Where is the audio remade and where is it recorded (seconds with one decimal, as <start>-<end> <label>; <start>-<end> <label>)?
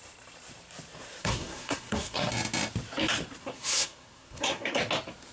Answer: 0.0-1.2 recorded; 1.2-2.3 remade; 2.3-3.4 recorded; 3.4-4.8 remade; 4.8-5.3 recorded